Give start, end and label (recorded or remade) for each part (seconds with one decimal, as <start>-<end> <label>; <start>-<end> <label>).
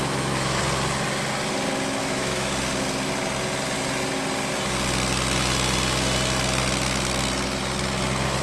0.0-0.6 remade; 0.6-2.0 recorded; 2.0-2.5 remade; 2.5-8.4 recorded